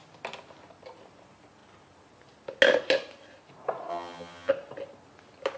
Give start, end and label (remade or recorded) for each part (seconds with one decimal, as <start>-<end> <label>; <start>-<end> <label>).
0.0-3.9 recorded; 3.9-4.5 remade; 4.5-5.6 recorded